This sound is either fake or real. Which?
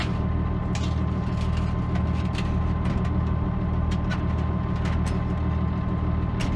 real